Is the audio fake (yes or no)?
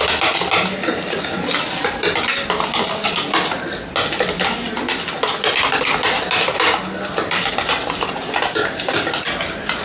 no